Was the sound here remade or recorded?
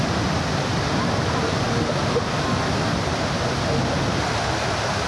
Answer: recorded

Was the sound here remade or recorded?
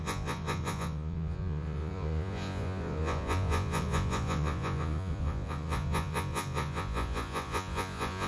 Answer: remade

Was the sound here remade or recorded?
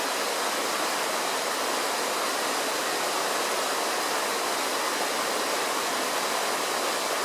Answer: recorded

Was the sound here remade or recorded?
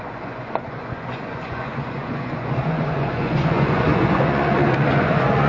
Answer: remade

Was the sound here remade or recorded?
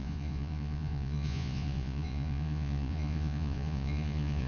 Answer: remade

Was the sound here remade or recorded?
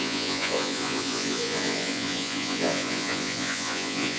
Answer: remade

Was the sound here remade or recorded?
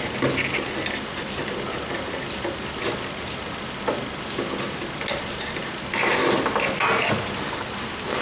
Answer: recorded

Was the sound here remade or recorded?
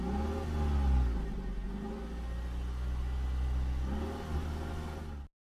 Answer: recorded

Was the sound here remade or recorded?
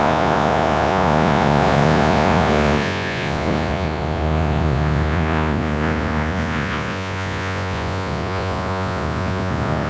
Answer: remade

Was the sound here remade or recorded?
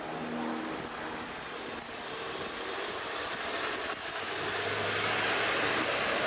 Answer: recorded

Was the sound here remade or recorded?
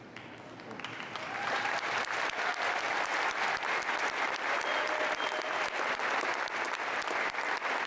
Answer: recorded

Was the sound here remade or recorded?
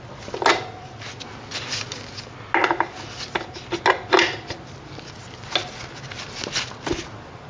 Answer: recorded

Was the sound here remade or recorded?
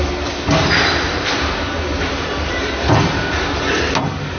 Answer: recorded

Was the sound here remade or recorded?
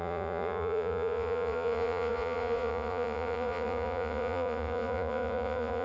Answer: remade